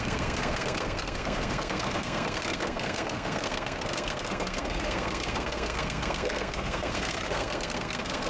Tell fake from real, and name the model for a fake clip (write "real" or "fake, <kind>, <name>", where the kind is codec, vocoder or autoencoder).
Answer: fake, codec, SNAC